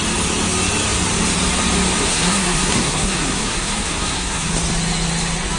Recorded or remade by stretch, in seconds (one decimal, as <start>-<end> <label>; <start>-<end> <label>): 0.0-2.0 recorded; 2.0-4.5 remade; 4.5-5.6 recorded